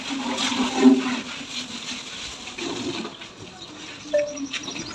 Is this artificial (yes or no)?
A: no